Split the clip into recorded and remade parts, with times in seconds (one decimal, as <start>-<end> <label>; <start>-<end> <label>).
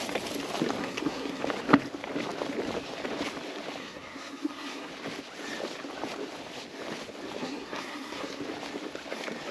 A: 0.0-0.8 recorded; 0.8-1.4 remade; 1.4-3.8 recorded; 3.8-4.9 remade; 4.9-7.4 recorded; 7.4-8.4 remade; 8.4-9.5 recorded